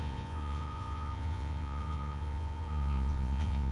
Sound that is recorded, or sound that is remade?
remade